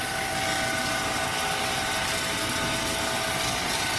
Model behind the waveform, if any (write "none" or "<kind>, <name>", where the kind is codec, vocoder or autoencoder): none